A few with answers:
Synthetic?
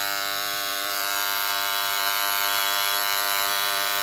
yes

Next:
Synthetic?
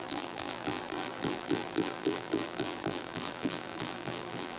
yes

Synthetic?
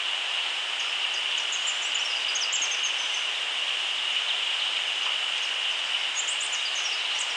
no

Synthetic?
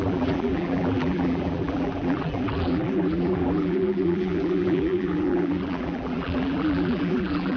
yes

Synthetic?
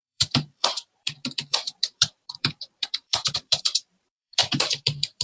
yes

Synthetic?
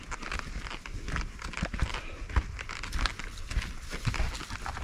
no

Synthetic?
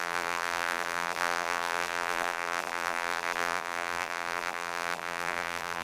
yes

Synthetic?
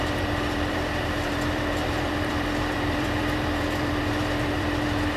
yes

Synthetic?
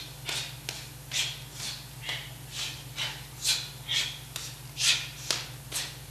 no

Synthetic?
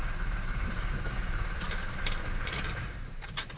yes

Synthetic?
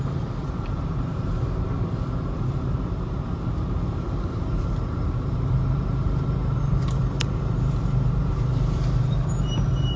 yes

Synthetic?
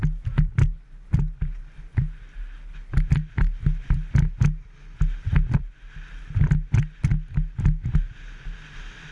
no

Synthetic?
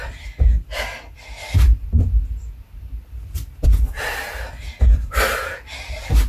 no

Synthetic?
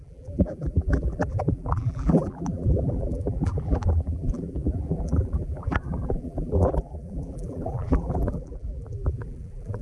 yes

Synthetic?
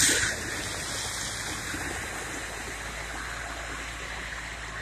no